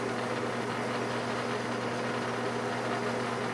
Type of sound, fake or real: real